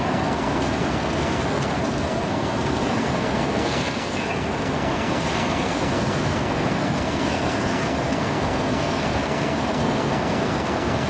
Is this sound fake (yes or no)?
yes